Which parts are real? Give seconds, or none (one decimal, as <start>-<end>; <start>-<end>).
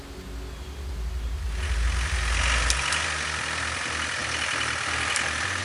0.0-5.6